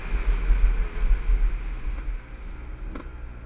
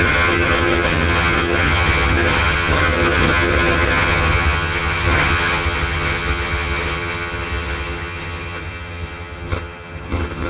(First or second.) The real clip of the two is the first